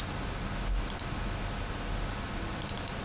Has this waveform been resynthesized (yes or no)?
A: no